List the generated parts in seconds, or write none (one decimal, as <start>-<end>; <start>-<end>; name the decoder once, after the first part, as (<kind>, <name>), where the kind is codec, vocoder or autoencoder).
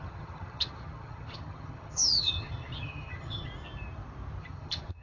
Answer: 0.0-3.5 (vocoder, HiFi-GAN); 4.4-5.0